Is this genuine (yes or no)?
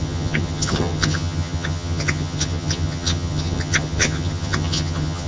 no